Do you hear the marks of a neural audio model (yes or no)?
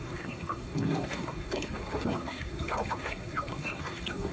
yes